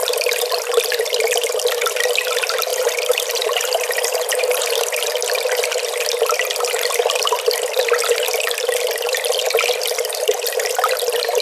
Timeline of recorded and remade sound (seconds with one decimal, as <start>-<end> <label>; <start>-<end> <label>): 0.0-2.7 recorded; 2.7-4.6 remade; 4.6-11.4 recorded